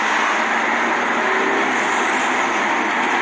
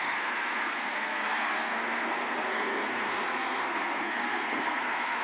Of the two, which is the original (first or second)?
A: first